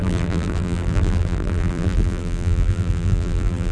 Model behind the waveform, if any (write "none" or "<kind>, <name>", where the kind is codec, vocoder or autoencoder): vocoder, BigVGAN v2